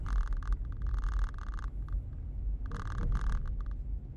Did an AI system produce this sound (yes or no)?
no